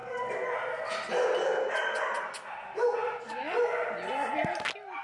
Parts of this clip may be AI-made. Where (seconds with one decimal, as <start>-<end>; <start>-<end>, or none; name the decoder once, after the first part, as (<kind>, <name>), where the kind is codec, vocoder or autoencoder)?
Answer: none